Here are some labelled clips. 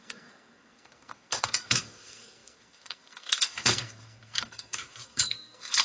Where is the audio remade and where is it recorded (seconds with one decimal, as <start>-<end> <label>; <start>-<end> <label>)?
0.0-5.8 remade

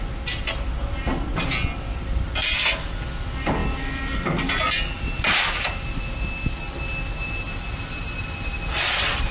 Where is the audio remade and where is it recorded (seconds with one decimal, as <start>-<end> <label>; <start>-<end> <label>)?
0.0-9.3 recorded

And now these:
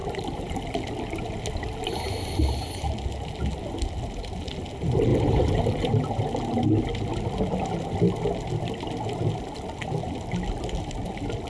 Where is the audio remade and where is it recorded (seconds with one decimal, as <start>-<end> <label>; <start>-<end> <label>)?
0.0-0.6 remade; 0.6-5.1 recorded; 5.1-5.9 remade; 5.9-11.5 recorded